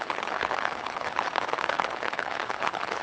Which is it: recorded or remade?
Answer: remade